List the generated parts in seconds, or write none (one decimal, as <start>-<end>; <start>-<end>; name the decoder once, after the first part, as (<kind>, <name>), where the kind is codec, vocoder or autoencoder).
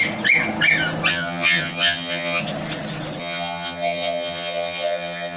1.1-2.4 (vocoder, HiFi-GAN); 3.2-5.4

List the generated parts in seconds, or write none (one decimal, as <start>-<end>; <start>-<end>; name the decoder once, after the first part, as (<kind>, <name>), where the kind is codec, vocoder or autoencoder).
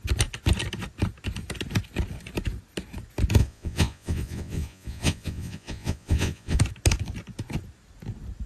3.4-6.6 (vocoder, Vocos)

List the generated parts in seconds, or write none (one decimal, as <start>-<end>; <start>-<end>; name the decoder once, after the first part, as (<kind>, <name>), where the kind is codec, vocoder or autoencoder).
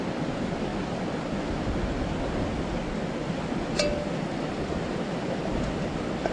none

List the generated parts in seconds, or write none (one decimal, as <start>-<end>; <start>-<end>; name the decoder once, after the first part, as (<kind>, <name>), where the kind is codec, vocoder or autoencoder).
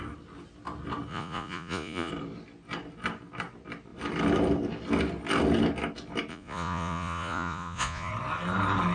1.1-2.1 (vocoder, Vocos); 6.3-8.1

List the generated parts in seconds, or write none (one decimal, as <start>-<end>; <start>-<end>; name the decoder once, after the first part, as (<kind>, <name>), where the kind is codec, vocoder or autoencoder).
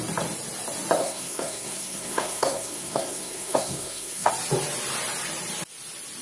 1.0-4.3 (codec, SNAC)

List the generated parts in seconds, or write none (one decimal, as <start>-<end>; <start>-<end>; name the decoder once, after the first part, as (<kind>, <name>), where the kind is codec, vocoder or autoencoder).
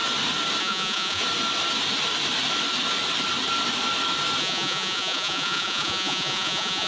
0.6-1.2 (vocoder, Vocos); 4.4-6.9